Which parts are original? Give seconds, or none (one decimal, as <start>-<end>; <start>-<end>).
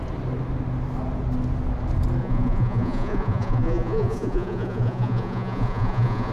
0.0-2.2